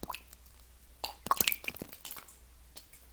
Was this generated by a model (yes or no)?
no